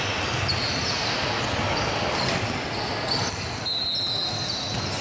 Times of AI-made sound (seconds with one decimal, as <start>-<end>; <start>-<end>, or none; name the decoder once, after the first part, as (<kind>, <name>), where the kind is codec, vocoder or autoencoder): none